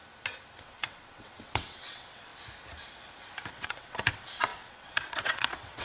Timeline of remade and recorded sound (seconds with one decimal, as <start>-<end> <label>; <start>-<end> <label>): 0.0-0.6 recorded; 0.6-2.3 remade; 2.3-3.5 recorded; 3.5-5.8 remade